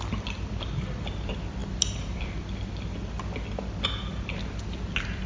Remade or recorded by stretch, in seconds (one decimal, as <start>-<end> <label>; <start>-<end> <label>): 0.0-5.3 recorded